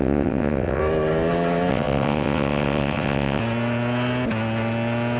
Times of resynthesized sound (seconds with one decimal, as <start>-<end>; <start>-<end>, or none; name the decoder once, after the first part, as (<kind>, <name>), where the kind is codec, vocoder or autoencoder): 0.0-0.8 (vocoder, WaveNeXt); 1.7-3.4